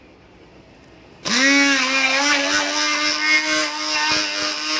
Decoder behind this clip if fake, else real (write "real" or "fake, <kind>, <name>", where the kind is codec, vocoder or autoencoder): real